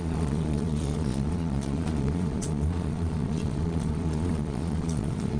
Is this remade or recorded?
remade